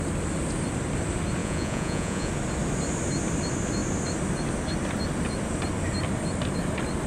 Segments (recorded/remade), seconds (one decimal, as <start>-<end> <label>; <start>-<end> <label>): 0.0-1.4 recorded; 1.4-2.3 remade; 2.3-7.1 recorded